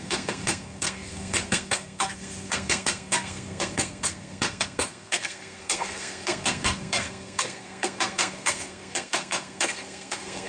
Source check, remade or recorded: remade